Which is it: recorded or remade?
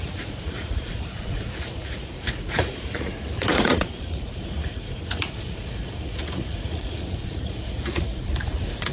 remade